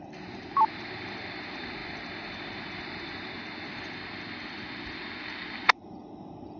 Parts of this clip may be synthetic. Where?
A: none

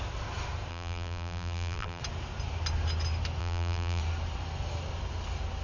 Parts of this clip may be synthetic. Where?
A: 0.7-2.0 (vocoder, BigVGAN v2); 3.4-4.0

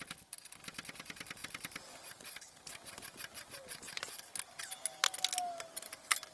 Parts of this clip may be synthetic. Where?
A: none